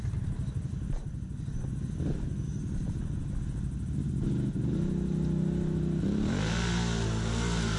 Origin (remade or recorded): recorded